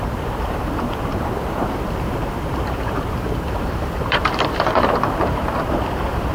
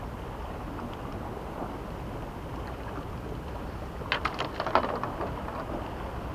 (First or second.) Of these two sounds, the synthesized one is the first